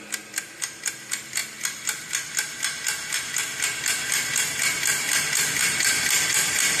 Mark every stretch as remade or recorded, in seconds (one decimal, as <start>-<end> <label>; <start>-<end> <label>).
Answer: 0.0-1.4 remade; 1.4-5.5 recorded; 5.5-6.8 remade